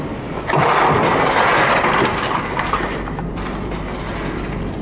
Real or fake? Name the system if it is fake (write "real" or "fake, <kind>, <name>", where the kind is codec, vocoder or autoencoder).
real